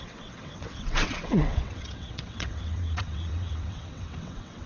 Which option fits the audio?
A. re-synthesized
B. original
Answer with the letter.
A